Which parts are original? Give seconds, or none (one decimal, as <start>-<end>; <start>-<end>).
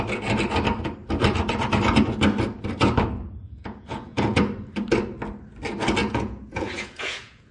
0.0-3.4; 4.4-6.0